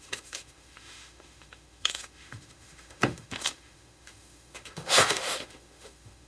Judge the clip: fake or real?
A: fake